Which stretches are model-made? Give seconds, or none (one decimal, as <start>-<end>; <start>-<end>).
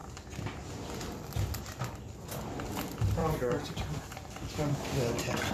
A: 3.2-4.7